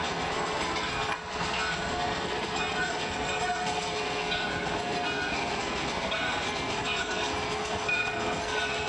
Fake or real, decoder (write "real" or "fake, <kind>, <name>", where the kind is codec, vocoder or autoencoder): fake, codec, SNAC